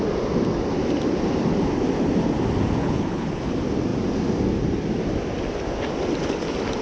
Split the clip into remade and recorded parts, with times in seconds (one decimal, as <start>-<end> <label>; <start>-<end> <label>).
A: 0.0-2.8 recorded; 2.8-3.5 remade; 3.5-6.8 recorded